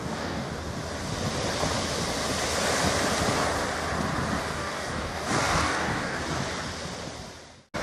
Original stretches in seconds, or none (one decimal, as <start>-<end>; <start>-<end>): 0.5-4.5; 6.2-7.8